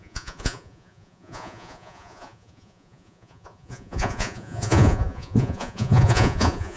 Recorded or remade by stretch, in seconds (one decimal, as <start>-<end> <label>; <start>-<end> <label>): 0.0-6.8 remade